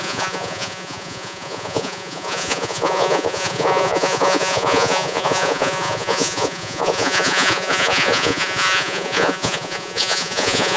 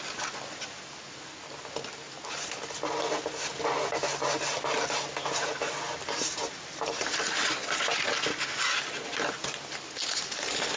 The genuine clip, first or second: second